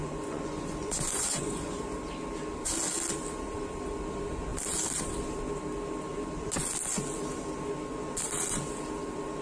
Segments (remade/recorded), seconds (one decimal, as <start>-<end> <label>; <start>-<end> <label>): 0.0-1.8 remade; 1.8-9.4 recorded